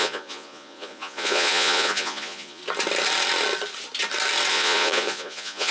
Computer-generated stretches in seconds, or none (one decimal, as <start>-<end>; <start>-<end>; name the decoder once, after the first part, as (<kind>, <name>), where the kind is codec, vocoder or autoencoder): 0.0-2.6 (vocoder, Vocos); 4.5-5.7